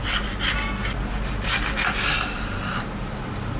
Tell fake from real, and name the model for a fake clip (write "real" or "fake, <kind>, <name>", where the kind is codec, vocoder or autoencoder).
real